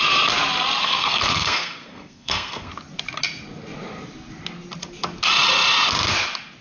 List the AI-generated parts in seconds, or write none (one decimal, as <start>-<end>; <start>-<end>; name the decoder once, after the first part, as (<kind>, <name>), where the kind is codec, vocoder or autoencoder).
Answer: 0.8-2.7 (codec, SNAC)